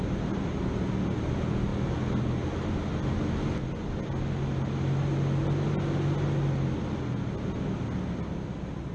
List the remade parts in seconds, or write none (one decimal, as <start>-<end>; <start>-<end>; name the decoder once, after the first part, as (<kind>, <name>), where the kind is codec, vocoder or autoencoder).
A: none